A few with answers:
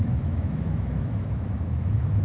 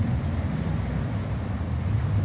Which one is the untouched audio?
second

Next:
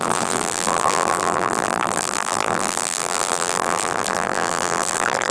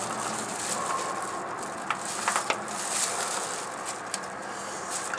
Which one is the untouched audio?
second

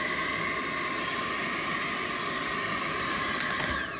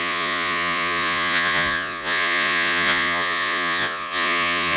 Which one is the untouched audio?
first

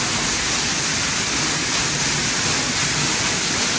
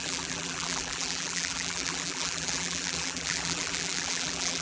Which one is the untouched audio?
first